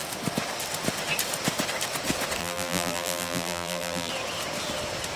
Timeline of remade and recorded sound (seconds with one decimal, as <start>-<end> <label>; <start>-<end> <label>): 0.0-2.4 recorded; 2.4-4.1 remade; 4.1-5.2 recorded